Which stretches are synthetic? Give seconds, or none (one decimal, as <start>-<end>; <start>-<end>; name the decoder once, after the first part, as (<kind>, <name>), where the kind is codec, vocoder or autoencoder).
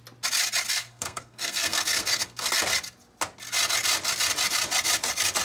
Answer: 0.7-2.5 (codec, SNAC)